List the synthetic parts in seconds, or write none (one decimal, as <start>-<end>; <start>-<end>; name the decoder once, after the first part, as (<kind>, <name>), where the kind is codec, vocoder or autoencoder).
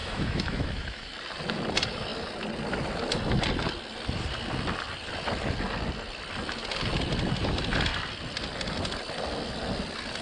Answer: 0.0-1.1 (autoencoder, DAC-VAE)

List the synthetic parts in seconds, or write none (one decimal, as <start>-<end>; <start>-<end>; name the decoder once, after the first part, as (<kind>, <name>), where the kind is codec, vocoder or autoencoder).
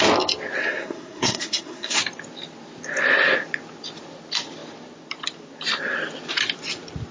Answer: 0.6-2.0 (codec, SNAC)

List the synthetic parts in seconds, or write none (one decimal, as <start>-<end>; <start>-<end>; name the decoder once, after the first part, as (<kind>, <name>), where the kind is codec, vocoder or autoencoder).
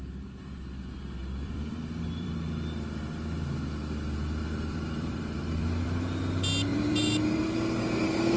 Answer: 1.2-2.7 (vocoder, BigVGAN v2); 4.7-6.1; 6.7-7.4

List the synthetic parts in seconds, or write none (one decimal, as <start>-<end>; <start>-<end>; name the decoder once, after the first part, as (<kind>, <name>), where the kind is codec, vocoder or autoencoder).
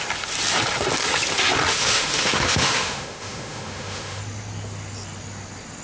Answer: 1.7-4.2 (autoencoder, DAC-VAE)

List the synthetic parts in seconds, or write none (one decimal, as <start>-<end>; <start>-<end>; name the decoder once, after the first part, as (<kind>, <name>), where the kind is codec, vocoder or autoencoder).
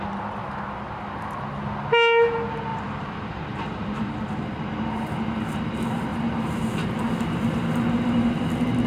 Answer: 2.7-4.3 (vocoder, BigVGAN v2); 6.1-8.3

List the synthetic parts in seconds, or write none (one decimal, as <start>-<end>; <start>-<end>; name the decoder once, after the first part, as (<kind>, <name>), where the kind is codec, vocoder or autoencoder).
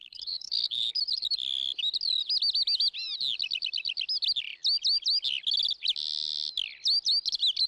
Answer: 0.0-0.9 (codec, HILCodec)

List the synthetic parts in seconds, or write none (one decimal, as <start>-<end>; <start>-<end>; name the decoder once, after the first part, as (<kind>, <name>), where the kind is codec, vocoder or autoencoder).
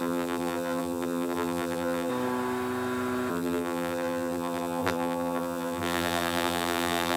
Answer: 0.0-2.1 (vocoder, BigVGAN v2); 3.3-7.2